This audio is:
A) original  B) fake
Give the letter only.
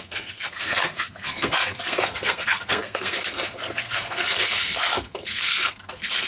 B